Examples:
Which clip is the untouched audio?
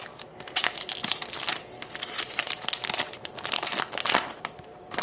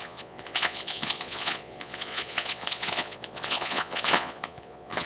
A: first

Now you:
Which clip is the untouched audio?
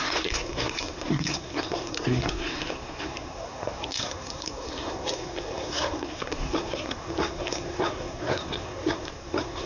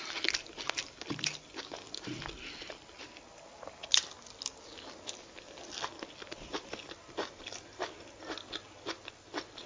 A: second